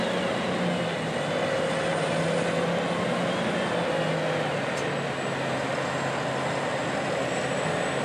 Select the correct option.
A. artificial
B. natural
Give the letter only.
B